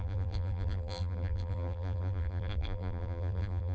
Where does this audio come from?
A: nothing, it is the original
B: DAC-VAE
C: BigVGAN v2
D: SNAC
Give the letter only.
C